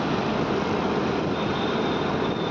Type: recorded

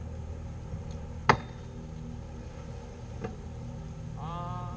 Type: recorded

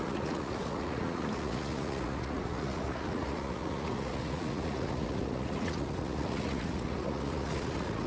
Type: remade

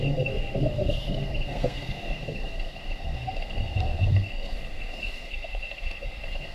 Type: remade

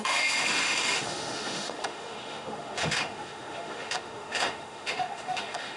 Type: remade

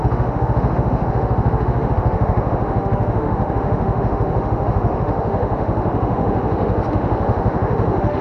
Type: remade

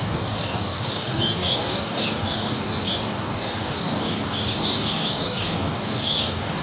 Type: remade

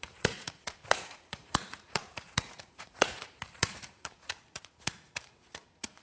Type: remade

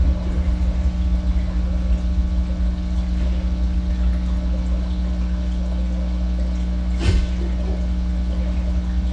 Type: recorded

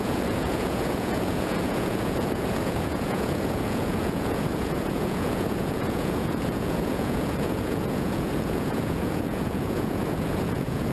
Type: remade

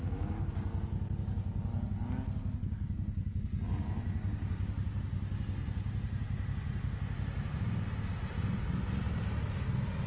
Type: recorded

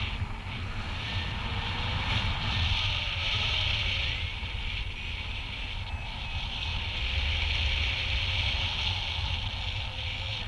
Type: recorded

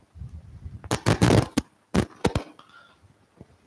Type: recorded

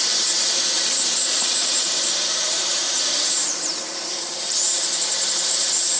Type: remade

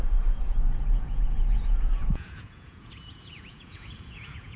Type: remade